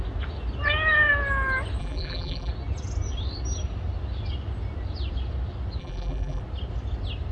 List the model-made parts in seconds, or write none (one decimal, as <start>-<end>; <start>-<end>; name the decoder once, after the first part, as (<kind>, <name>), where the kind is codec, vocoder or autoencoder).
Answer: 1.8-2.5 (vocoder, BigVGAN v2); 5.8-6.4